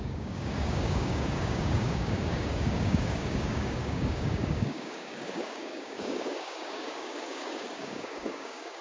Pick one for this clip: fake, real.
fake